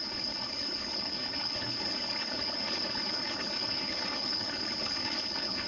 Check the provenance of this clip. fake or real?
fake